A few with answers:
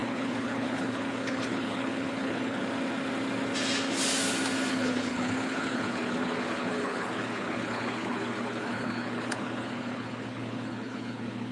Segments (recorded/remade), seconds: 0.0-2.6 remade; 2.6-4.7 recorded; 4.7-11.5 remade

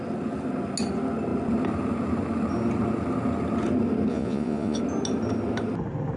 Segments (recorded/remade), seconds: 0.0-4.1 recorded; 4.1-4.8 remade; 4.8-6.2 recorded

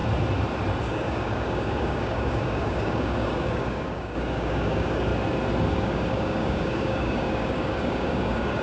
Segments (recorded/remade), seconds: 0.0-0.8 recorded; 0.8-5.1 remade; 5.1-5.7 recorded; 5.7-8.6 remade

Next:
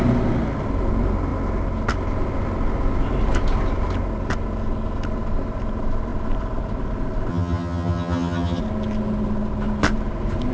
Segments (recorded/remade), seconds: 0.0-7.3 recorded; 7.3-8.6 remade; 8.6-10.5 recorded

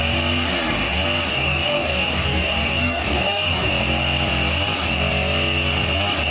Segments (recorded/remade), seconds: 0.0-1.3 recorded; 1.3-3.7 remade; 3.7-6.3 recorded

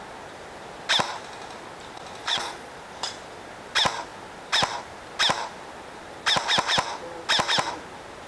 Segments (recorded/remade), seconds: 0.0-2.2 recorded; 2.2-2.7 remade; 2.7-8.3 recorded

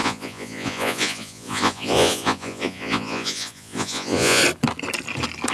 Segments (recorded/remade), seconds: 0.0-4.4 remade; 4.4-5.5 recorded